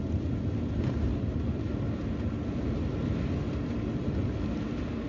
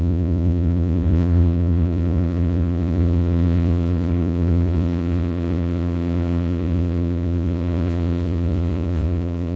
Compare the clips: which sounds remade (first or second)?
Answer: second